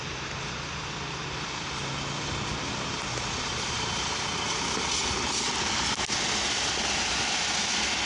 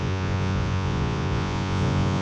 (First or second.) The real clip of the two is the first